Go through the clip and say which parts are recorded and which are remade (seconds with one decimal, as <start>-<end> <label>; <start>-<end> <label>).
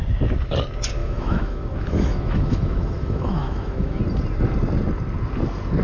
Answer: 0.0-1.0 recorded; 1.0-4.0 remade; 4.0-5.8 recorded